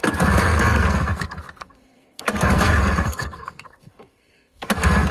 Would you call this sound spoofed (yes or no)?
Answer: yes